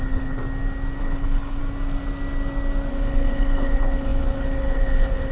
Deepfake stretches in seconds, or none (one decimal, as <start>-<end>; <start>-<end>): 0.0-0.4; 1.0-1.6; 2.9-5.3